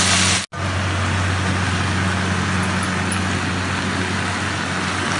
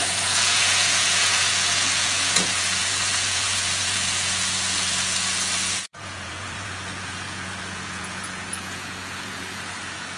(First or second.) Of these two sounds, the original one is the first